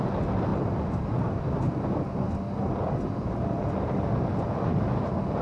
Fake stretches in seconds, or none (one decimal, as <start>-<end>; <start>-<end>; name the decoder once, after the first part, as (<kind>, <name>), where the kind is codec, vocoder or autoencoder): none